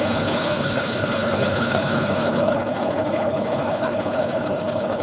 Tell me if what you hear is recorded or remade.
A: remade